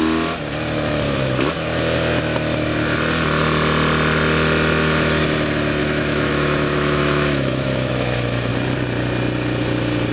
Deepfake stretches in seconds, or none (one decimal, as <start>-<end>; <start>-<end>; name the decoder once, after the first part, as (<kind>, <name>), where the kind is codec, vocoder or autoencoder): 5.8-8.5 (autoencoder, DAC-VAE)